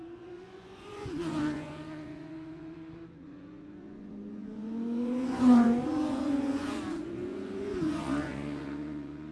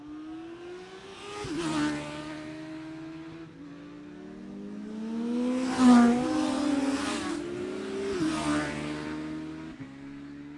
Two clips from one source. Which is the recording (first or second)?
second